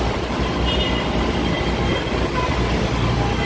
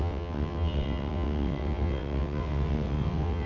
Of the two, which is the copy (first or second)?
second